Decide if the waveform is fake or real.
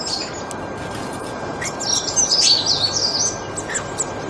real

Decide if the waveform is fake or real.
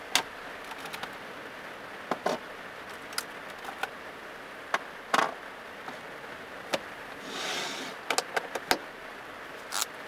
real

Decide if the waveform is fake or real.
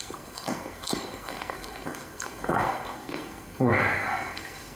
fake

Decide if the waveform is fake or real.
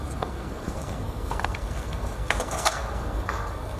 fake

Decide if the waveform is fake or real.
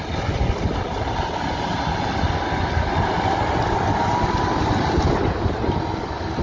real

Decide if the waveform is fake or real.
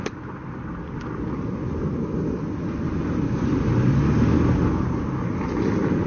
real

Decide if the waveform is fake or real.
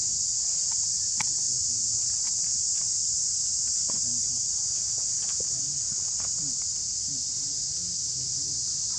real